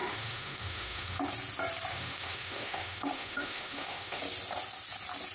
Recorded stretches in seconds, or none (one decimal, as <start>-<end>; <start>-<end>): 1.2-1.9; 4.2-5.3